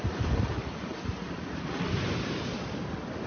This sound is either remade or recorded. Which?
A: recorded